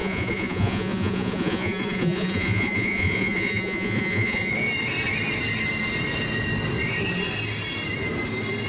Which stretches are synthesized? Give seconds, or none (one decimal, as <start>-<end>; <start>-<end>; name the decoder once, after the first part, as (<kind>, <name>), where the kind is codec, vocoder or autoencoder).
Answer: 0.0-4.5 (vocoder, Vocos)